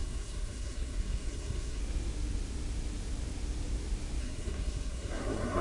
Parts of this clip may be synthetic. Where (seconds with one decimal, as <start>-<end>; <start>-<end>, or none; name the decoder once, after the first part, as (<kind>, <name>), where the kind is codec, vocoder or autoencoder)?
0.0-1.8 (codec, SNAC); 4.2-5.6